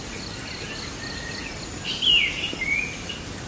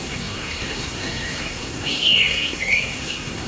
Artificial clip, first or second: second